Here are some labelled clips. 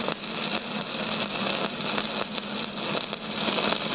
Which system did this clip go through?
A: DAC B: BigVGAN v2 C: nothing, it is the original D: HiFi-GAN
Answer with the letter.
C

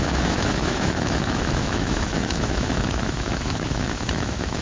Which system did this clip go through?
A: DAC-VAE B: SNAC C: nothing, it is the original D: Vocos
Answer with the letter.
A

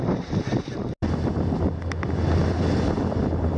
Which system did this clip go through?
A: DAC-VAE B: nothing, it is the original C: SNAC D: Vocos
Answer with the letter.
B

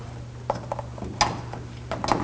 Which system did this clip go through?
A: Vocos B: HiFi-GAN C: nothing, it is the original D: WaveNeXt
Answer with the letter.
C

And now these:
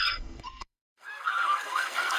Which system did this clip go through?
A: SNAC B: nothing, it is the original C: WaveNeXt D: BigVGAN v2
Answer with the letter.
A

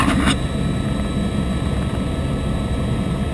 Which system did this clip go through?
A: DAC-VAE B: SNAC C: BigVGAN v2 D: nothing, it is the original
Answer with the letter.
D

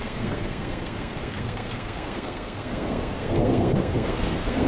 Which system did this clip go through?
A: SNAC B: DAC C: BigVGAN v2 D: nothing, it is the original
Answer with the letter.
A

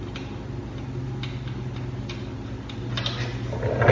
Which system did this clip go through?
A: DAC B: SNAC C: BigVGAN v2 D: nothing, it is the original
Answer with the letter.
D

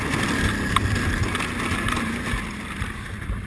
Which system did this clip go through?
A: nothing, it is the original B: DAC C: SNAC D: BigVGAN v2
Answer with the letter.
A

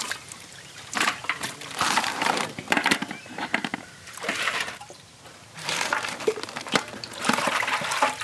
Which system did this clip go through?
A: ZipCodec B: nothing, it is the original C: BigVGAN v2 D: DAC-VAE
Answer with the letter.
C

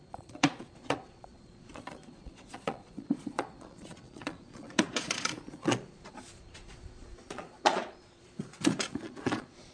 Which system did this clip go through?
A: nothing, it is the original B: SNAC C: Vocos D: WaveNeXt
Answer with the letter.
C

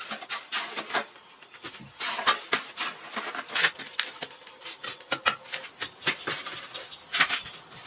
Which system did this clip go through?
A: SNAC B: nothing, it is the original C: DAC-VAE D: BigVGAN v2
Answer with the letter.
B